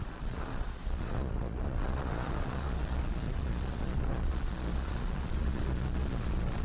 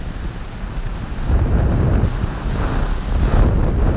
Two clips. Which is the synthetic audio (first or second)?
first